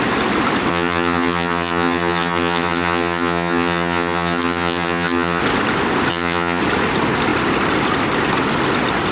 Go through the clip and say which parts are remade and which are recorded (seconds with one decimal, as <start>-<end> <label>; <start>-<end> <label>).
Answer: 0.0-0.7 recorded; 0.7-5.4 remade; 5.4-6.1 recorded; 6.1-6.6 remade; 6.6-9.1 recorded